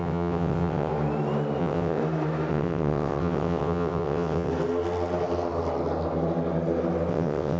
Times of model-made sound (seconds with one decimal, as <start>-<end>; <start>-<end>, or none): 0.0-0.9; 1.6-2.0; 2.5-4.5; 7.1-7.6